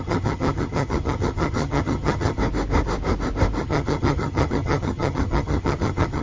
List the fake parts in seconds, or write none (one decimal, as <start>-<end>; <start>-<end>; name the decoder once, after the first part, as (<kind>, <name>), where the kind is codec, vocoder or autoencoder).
0.0-2.4 (vocoder, HiFi-GAN); 3.6-6.2